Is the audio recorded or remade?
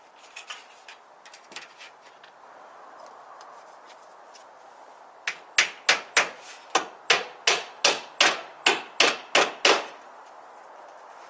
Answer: recorded